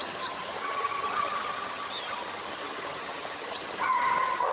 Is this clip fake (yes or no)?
yes